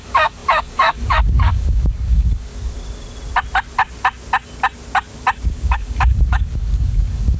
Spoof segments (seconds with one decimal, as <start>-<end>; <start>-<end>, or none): 0.0-2.5; 5.5-7.4